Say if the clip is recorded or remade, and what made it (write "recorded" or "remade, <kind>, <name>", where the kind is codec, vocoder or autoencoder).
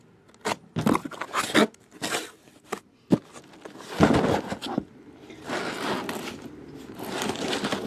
recorded